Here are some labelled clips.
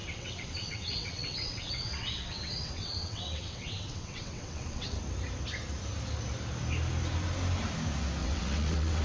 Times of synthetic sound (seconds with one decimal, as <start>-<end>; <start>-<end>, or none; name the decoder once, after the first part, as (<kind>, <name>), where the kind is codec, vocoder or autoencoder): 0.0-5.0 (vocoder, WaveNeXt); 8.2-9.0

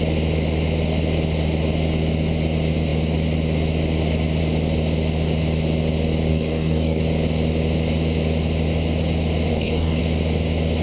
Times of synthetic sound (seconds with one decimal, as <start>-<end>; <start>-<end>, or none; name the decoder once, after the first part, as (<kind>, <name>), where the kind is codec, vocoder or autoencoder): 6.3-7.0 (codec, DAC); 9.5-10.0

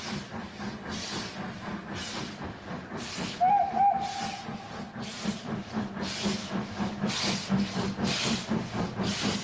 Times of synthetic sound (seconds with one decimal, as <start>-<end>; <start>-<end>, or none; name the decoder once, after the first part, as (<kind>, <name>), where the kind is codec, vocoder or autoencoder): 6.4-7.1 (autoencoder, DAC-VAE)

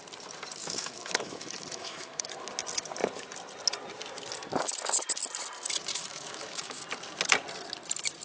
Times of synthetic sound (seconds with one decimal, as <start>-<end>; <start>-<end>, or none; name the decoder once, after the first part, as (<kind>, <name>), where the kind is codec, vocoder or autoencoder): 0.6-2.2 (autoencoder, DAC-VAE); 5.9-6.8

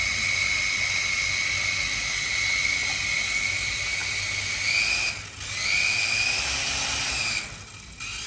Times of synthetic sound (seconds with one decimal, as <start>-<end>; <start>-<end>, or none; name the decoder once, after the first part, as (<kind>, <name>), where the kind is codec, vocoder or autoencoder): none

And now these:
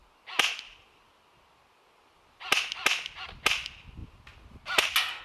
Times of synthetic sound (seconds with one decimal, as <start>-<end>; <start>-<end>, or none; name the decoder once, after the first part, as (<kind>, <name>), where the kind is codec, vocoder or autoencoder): none

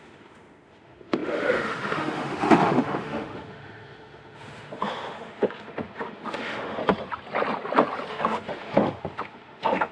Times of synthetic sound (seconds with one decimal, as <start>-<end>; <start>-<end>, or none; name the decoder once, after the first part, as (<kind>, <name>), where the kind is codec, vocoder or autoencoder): 0.0-6.8 (autoencoder, DAC-VAE); 8.1-9.9